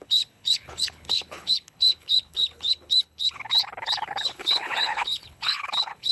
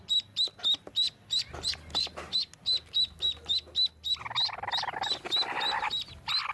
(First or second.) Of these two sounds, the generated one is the first